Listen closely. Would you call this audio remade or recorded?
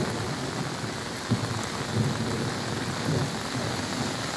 recorded